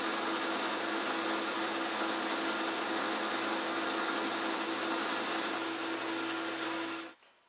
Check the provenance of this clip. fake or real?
real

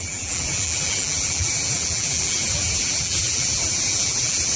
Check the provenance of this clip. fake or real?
fake